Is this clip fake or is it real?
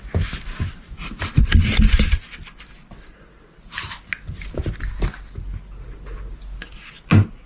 real